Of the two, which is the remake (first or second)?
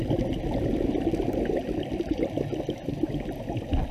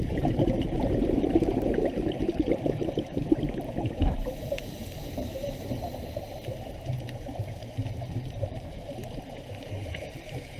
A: second